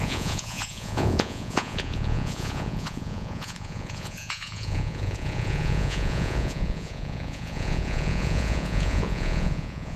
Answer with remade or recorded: remade